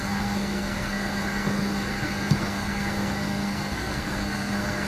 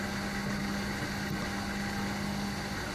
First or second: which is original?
second